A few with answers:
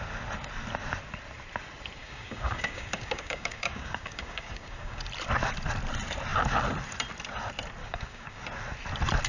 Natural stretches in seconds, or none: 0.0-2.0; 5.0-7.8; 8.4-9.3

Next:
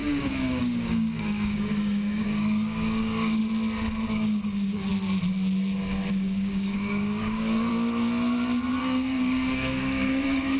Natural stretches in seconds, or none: 3.4-4.1; 4.9-6.1; 7.7-8.8

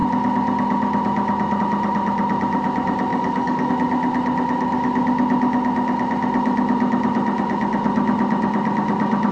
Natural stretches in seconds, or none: 0.0-3.1; 3.7-9.3

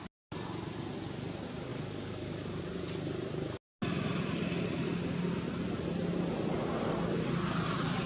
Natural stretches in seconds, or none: 0.0-1.7; 2.6-8.1

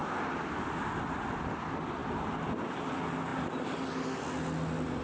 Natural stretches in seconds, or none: 0.0-5.0